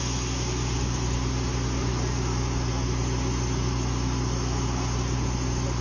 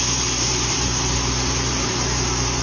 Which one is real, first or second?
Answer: first